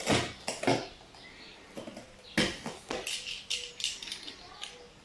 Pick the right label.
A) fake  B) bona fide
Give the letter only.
B